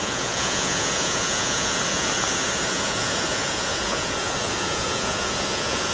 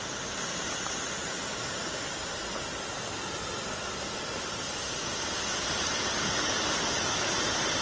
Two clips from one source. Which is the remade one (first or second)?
first